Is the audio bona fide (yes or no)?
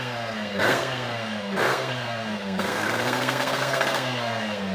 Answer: no